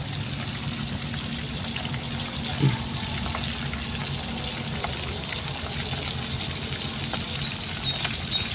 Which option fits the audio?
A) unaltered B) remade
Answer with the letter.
A